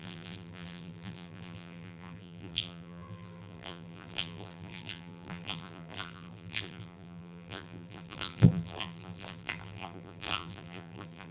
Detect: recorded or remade remade